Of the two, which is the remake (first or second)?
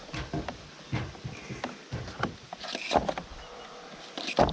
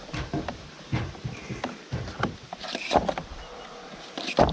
second